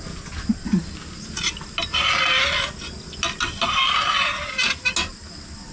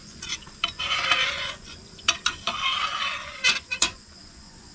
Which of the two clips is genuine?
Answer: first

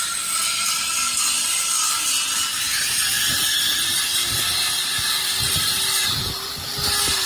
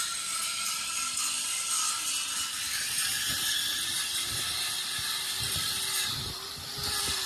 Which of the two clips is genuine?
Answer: first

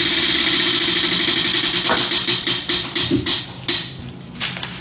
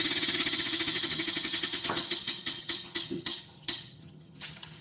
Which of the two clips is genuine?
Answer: first